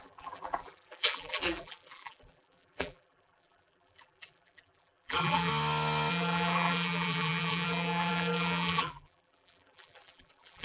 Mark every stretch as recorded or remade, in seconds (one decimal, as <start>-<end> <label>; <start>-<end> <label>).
0.0-5.5 remade; 5.5-6.1 recorded; 6.1-10.6 remade